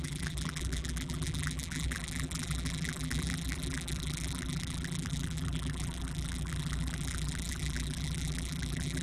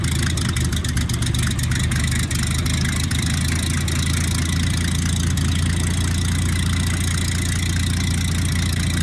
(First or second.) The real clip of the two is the second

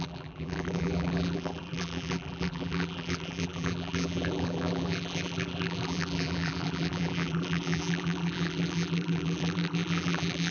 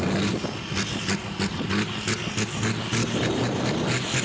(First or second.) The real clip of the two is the second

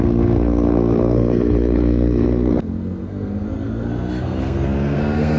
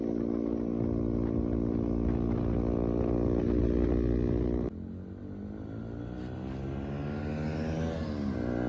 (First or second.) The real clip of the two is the second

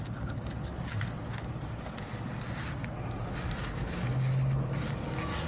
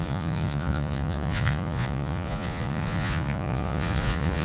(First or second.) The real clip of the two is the first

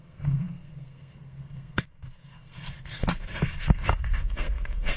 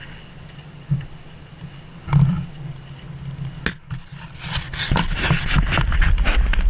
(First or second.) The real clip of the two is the second